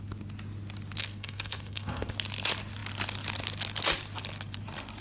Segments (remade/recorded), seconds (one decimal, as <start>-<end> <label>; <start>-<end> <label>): 0.0-1.0 recorded; 1.0-2.1 remade; 2.1-5.0 recorded